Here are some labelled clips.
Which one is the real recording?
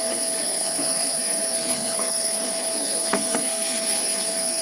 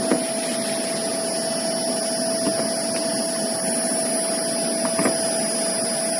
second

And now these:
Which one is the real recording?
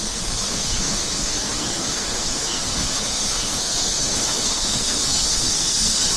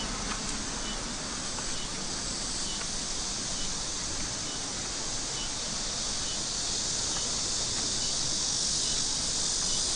second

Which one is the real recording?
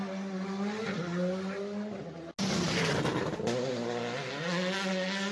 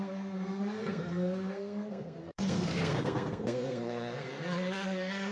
first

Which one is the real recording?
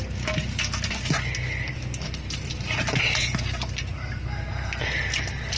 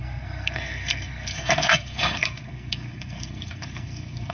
first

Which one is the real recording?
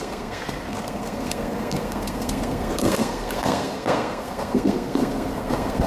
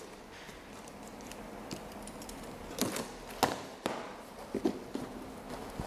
second